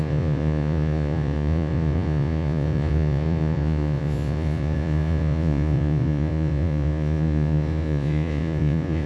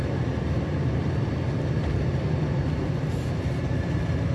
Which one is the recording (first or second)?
second